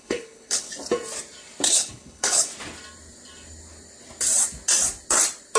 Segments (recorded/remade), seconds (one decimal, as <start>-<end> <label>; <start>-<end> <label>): 0.0-0.7 remade; 0.7-1.7 recorded; 1.7-2.5 remade; 2.5-5.6 recorded